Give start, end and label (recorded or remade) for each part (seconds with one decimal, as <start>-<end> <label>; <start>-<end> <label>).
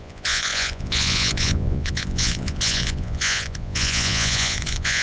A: 0.0-5.0 remade